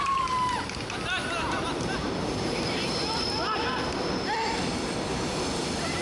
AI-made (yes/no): yes